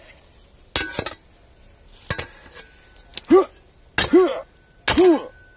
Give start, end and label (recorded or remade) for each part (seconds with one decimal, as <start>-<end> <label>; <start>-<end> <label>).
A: 0.0-5.6 recorded